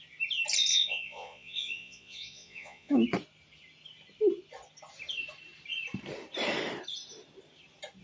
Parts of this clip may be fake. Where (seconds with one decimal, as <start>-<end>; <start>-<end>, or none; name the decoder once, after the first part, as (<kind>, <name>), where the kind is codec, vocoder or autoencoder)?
0.7-2.9 (vocoder, Vocos)